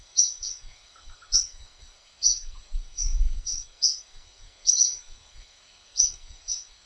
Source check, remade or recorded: remade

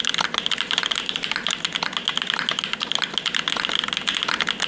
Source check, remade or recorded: recorded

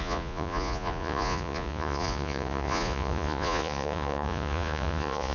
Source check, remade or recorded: remade